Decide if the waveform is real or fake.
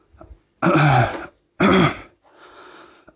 real